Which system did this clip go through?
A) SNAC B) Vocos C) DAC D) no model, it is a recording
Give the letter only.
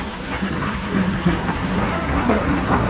A